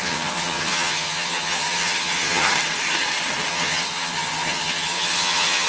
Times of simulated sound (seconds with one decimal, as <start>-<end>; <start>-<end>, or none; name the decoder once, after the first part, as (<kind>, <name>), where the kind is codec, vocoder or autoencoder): 0.0-2.5 (vocoder, HiFi-GAN); 3.5-5.7